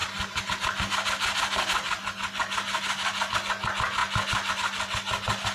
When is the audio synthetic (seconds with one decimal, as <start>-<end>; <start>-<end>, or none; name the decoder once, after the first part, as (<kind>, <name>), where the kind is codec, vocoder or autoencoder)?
none